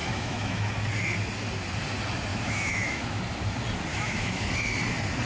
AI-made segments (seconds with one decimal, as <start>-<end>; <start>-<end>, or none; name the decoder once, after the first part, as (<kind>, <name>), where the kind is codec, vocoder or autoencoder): 0.0-0.7 (autoencoder, DAC-VAE); 2.3-3.2; 3.9-4.4